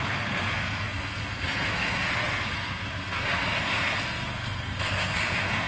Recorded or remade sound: remade